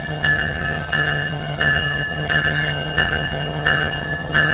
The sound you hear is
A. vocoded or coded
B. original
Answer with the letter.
A